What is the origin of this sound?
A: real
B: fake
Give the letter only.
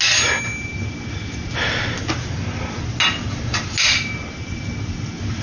A